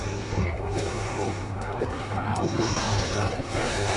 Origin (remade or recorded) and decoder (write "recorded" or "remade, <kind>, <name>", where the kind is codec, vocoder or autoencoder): remade, codec, SNAC